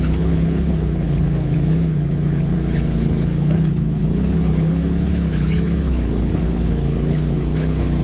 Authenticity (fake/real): fake